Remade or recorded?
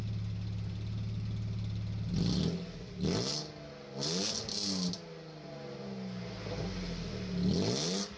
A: recorded